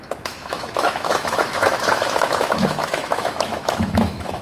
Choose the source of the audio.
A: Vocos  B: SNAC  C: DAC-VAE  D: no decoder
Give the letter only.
C